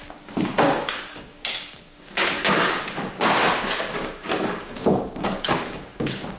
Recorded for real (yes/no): no